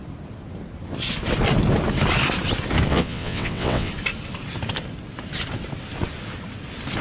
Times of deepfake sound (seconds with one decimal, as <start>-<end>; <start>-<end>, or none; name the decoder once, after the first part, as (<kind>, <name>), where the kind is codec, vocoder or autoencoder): 2.9-3.9 (vocoder, WaveNeXt)